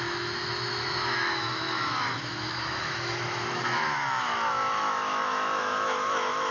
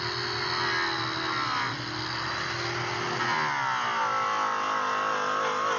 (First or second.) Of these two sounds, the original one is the second